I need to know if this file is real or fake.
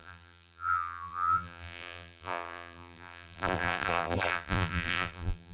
fake